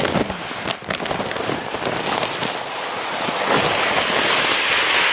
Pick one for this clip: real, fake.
real